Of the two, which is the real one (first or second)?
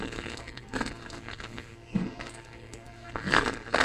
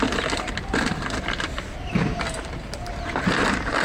second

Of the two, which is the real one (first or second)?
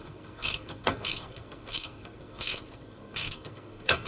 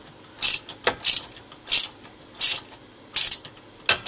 second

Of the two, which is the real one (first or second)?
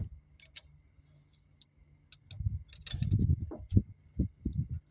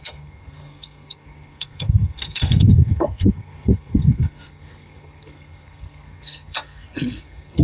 first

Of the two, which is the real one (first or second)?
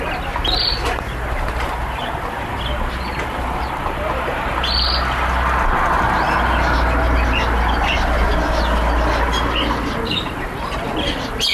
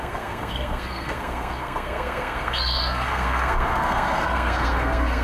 first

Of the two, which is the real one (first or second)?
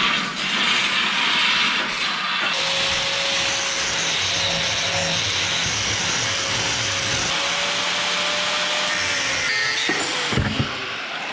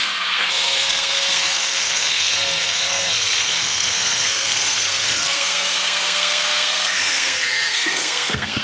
first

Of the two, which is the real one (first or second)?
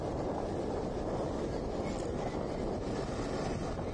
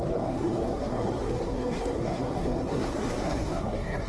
first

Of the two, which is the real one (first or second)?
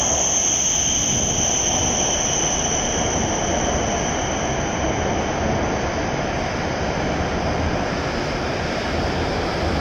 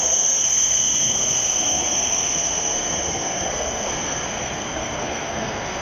first